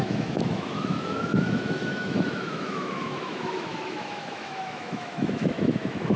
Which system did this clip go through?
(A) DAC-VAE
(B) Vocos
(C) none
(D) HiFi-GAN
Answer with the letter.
A